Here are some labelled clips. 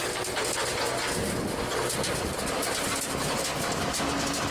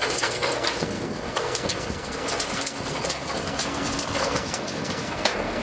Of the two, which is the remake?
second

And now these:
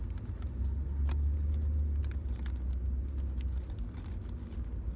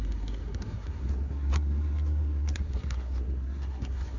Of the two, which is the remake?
second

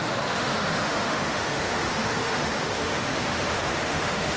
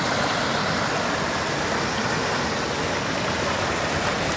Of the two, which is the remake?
first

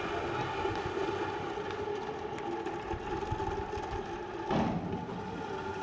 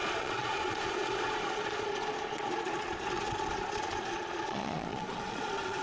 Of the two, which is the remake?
second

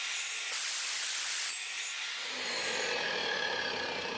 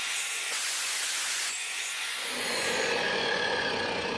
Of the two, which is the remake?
second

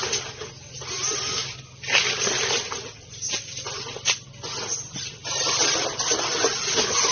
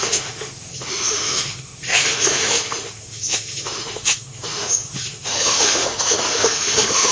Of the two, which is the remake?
second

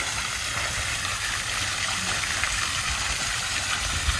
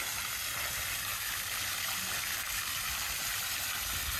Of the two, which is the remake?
first